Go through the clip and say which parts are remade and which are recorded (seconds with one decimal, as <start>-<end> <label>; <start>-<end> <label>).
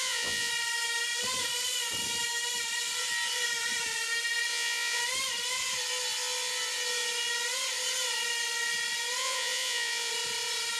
0.0-0.5 remade; 0.5-4.5 recorded; 4.5-5.0 remade; 5.0-9.2 recorded; 9.2-10.1 remade; 10.1-10.8 recorded